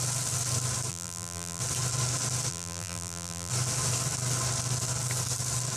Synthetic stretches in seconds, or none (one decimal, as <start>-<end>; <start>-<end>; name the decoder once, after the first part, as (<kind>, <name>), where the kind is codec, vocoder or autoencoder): 0.9-1.6 (vocoder, BigVGAN v2); 2.5-3.5